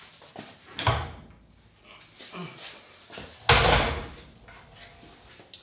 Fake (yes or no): no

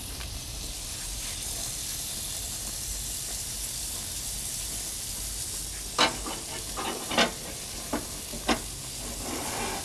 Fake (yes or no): no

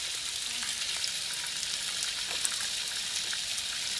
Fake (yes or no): no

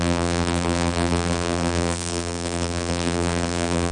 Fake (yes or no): yes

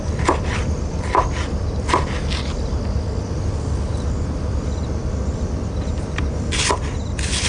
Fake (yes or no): no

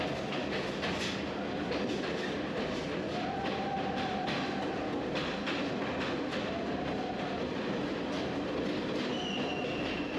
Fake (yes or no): no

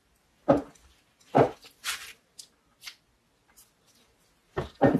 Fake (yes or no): yes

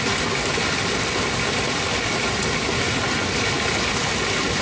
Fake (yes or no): no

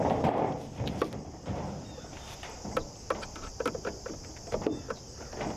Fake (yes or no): no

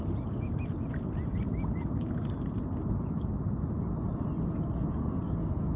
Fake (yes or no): no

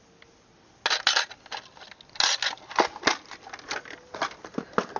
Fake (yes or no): no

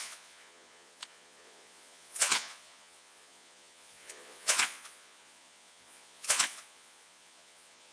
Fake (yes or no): yes